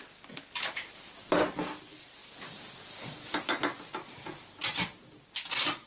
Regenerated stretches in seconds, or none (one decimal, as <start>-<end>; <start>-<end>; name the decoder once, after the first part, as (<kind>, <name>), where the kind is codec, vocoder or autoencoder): none